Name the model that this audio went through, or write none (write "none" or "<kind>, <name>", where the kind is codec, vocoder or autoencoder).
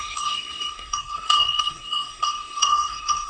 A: codec, SNAC